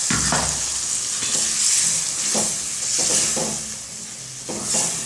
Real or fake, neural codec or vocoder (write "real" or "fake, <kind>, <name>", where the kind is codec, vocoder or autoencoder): real